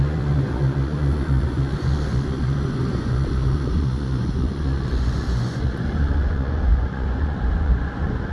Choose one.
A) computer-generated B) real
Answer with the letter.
A